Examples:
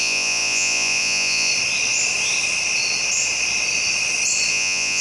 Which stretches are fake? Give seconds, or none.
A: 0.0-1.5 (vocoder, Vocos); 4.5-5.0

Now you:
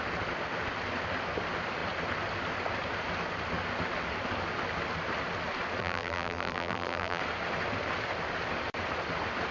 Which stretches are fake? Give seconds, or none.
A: 5.8-7.2 (vocoder, BigVGAN v2)

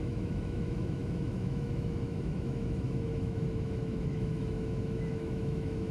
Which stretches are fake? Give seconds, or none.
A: 0.0-5.9 (autoencoder, DAC-VAE)

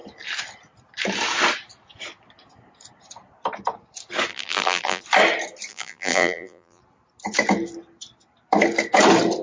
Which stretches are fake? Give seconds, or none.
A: 4.3-5.0 (vocoder, BigVGAN v2); 5.7-6.8

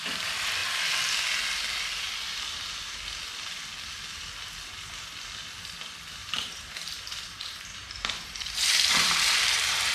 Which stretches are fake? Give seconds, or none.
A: 6.2-9.9 (vocoder, BigVGAN v2)